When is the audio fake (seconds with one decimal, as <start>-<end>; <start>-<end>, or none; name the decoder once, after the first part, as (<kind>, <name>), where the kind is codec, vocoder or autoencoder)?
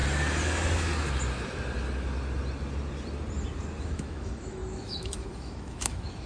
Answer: 3.8-6.3 (autoencoder, DAC-VAE)